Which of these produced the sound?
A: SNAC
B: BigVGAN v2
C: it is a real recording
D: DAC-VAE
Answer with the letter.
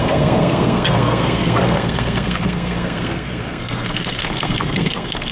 A